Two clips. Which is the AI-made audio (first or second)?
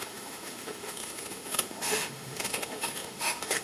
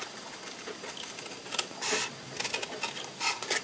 first